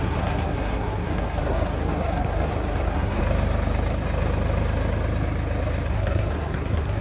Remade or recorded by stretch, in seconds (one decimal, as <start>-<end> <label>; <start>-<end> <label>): 0.0-3.2 remade; 3.2-5.9 recorded; 5.9-7.0 remade